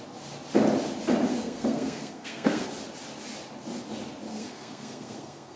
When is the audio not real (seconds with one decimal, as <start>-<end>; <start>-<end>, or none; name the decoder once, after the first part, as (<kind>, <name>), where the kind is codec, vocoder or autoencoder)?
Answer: 1.3-2.7 (codec, SNAC); 4.3-5.6